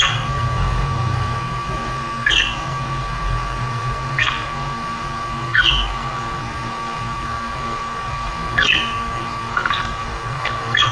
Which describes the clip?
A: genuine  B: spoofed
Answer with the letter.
B